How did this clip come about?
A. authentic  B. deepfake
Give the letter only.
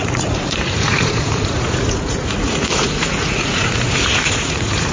B